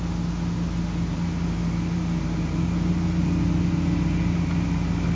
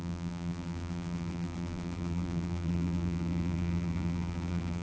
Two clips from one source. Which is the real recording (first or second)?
first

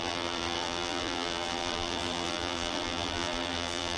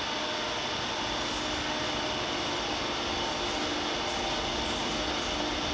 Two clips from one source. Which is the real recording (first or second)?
second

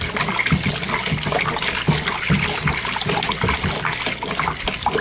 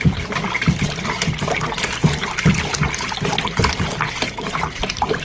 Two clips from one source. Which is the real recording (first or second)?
first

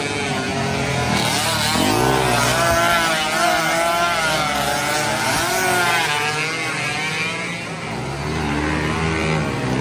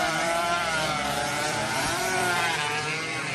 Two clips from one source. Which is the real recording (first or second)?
first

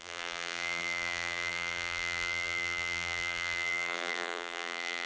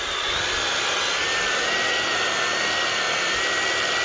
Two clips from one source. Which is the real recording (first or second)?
second